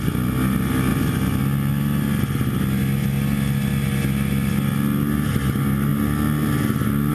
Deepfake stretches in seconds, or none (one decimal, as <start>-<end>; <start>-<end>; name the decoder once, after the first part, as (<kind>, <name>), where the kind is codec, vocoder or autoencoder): none